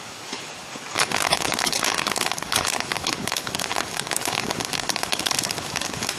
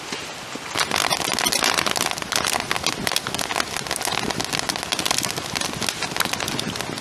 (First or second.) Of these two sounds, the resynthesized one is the first